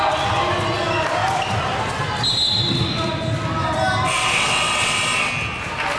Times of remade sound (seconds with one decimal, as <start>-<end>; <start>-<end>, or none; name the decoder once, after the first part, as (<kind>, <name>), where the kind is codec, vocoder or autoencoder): 4.2-5.3 (vocoder, WaveNeXt)